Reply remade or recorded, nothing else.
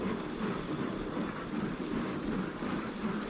recorded